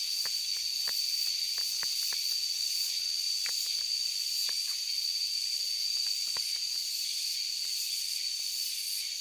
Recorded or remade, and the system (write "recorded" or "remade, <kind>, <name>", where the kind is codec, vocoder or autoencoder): recorded